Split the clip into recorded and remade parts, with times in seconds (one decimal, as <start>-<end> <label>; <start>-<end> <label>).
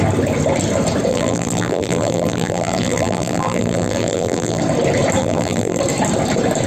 0.0-1.1 recorded; 1.1-4.6 remade; 4.6-5.2 recorded; 5.2-5.8 remade; 5.8-6.7 recorded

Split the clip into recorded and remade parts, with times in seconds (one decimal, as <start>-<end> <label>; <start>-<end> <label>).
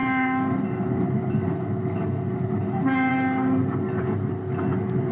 0.0-3.1 remade; 3.1-5.1 recorded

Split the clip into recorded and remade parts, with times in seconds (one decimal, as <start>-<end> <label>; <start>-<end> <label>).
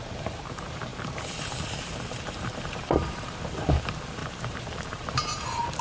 0.0-5.8 remade